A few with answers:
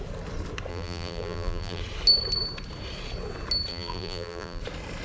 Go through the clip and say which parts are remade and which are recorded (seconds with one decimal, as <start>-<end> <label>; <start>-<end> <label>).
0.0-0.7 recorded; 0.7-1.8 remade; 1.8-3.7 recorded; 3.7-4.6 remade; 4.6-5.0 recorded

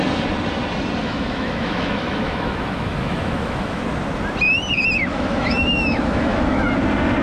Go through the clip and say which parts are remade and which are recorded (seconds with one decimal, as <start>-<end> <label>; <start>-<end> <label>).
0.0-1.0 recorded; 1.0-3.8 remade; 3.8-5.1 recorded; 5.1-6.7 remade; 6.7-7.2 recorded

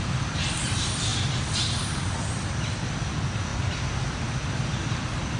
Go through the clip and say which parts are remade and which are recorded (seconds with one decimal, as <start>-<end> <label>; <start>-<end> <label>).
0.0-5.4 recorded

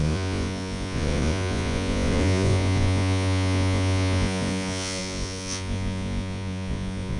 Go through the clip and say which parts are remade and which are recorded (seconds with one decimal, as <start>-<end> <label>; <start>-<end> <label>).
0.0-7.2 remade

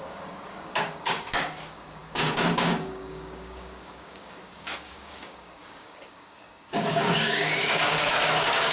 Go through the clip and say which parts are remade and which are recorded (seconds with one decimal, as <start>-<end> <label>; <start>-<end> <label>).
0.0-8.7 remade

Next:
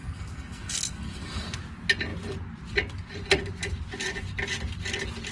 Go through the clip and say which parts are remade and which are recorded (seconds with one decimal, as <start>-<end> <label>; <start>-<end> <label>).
0.0-1.6 remade; 1.6-5.3 recorded

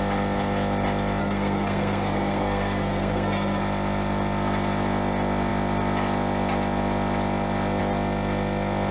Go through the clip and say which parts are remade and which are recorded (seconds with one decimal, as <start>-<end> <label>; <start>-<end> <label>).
0.0-1.2 recorded; 1.2-3.6 remade; 3.6-8.9 recorded